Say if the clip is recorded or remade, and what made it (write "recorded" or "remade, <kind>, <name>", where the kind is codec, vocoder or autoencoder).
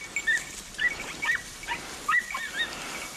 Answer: recorded